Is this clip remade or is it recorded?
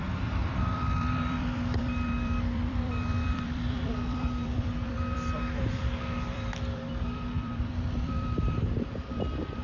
remade